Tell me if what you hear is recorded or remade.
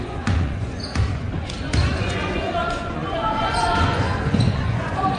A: remade